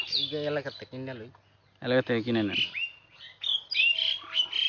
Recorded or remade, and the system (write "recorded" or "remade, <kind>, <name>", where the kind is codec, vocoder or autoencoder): recorded